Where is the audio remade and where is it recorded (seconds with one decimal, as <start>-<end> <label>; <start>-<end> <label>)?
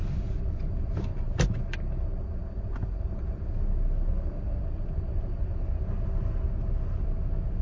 0.0-7.6 recorded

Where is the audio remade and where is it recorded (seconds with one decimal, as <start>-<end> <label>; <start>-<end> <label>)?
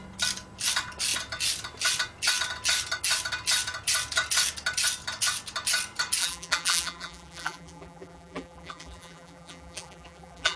0.0-6.2 recorded; 6.2-10.6 remade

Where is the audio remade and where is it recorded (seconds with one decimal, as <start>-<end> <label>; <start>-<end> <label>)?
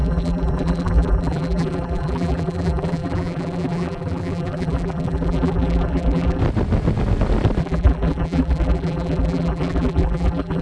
0.0-6.4 remade; 6.4-7.6 recorded; 7.6-10.6 remade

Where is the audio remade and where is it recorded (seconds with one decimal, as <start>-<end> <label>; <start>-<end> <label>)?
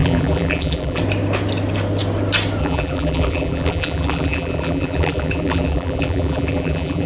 0.0-1.0 remade; 1.0-2.6 recorded; 2.6-7.1 remade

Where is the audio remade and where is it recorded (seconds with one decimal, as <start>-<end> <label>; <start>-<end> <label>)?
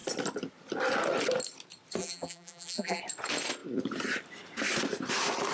0.0-2.0 recorded; 2.0-3.0 remade; 3.0-5.5 recorded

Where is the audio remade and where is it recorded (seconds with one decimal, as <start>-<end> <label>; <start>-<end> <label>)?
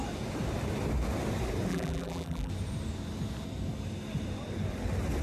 0.0-1.7 recorded; 1.7-2.5 remade; 2.5-5.2 recorded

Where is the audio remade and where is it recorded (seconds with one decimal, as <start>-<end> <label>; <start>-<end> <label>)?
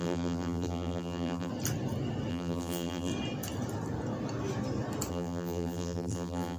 0.0-1.5 remade; 1.5-2.3 recorded; 2.3-3.1 remade; 3.1-5.1 recorded; 5.1-6.6 remade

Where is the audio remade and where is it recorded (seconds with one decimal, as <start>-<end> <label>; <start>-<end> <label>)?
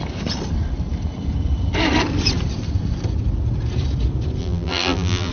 0.0-4.4 recorded; 4.4-5.3 remade